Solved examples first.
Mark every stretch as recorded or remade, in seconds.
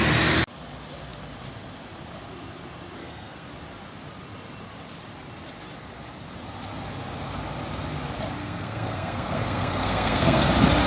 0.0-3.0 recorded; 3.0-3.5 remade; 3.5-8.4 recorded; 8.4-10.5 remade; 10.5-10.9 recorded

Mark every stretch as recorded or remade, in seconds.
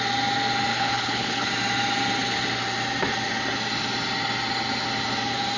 0.0-0.7 recorded; 0.7-1.5 remade; 1.5-5.6 recorded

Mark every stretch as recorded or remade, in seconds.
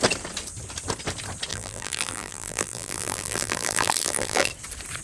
0.0-1.5 recorded; 1.5-4.5 remade; 4.5-5.0 recorded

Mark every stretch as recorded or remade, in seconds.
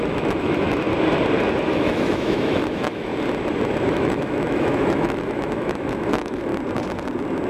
0.0-0.9 remade; 0.9-1.7 recorded; 1.7-3.1 remade; 3.1-3.9 recorded; 3.9-6.5 remade; 6.5-7.5 recorded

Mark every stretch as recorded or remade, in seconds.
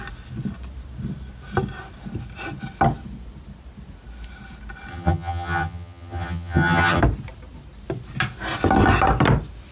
0.0-4.9 recorded; 4.9-7.0 remade; 7.0-9.7 recorded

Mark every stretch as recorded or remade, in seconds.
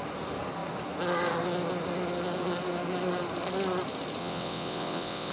0.0-4.2 recorded; 4.2-5.3 remade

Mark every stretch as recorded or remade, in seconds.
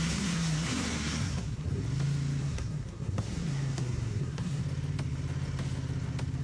0.0-1.8 remade; 1.8-2.4 recorded; 2.4-4.6 remade; 4.6-6.4 recorded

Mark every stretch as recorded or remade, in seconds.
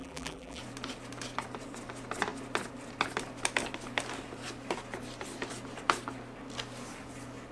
0.0-0.6 remade; 0.6-7.5 recorded